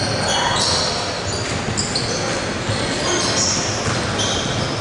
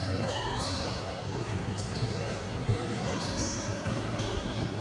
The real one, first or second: first